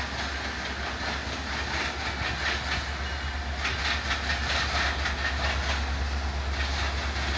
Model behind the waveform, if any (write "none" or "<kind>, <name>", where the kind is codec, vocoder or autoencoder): none